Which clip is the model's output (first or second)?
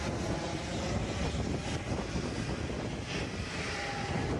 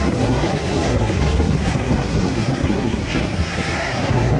second